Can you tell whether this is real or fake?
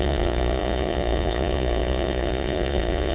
fake